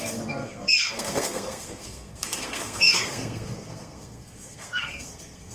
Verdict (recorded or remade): remade